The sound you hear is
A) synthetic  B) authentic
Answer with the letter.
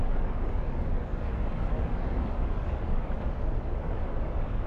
A